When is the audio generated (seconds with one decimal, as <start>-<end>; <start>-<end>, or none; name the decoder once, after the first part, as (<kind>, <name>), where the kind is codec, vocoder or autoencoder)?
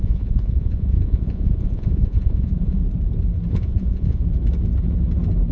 0.0-2.8 (vocoder, Vocos); 3.5-4.2